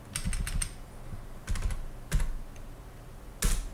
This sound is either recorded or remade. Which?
recorded